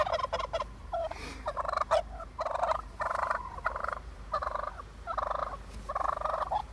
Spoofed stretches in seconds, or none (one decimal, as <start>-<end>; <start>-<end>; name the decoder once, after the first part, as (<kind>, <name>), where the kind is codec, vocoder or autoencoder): 0.8-4.8 (vocoder, BigVGAN v2)